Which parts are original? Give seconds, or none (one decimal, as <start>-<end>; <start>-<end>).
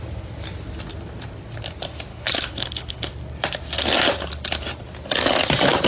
0.0-2.1; 3.1-5.9